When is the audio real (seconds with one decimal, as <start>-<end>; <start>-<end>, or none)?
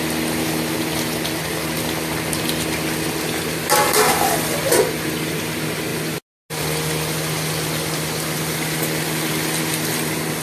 0.0-10.4